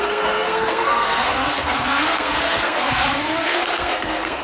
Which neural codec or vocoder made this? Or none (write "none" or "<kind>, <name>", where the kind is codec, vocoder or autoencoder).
codec, SNAC